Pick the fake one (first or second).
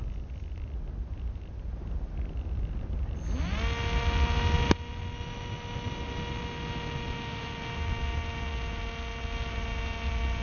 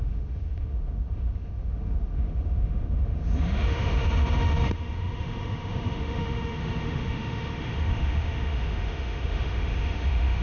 second